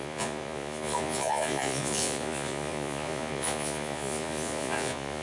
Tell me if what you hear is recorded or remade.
remade